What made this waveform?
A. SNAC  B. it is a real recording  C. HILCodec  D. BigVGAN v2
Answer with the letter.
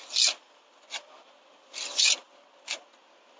B